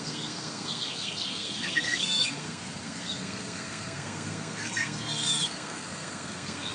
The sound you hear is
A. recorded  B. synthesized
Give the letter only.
B